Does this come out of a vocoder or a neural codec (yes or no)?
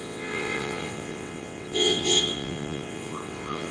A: yes